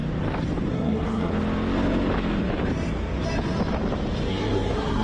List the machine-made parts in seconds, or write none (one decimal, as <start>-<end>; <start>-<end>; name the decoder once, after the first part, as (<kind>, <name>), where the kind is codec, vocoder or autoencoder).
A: 0.7-1.3 (codec, SNAC); 4.3-5.0